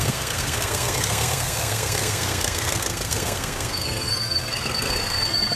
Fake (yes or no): yes